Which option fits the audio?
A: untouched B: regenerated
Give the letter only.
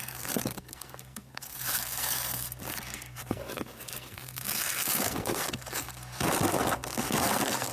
B